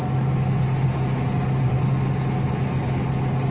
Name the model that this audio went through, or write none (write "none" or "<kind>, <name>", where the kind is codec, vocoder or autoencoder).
none